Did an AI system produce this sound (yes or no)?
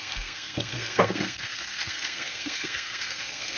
yes